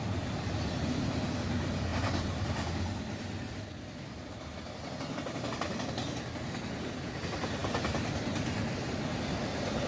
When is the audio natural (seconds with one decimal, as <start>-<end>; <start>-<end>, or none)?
0.0-1.9; 2.7-9.9